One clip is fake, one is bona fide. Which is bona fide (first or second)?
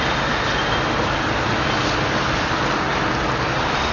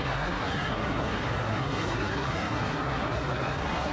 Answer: first